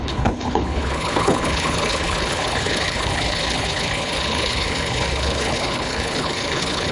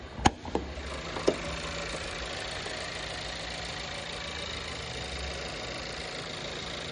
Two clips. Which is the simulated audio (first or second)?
first